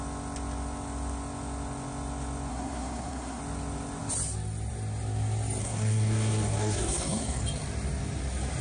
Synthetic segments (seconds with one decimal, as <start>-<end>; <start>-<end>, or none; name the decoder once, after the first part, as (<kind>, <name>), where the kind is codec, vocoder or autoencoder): 2.5-3.4 (codec, SNAC); 5.6-7.4